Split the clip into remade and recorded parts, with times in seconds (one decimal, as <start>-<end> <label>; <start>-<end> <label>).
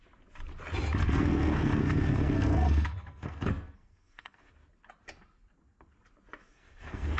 0.0-1.0 recorded; 1.0-4.5 remade; 4.5-6.4 recorded; 6.4-7.2 remade